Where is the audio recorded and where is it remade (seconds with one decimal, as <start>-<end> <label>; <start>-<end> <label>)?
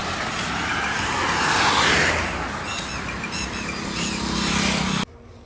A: 0.0-5.5 recorded